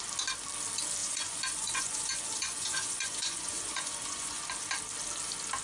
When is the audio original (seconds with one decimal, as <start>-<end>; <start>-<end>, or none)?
0.0-1.0; 4.4-5.6